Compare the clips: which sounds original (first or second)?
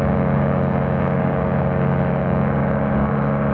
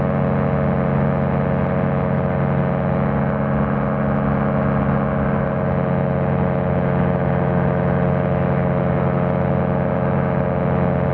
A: second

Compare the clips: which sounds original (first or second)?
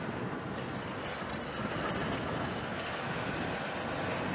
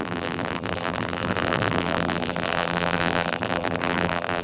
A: first